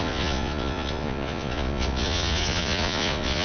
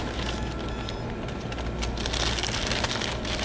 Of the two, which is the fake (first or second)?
first